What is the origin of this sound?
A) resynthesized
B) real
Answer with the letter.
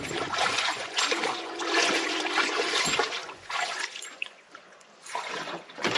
A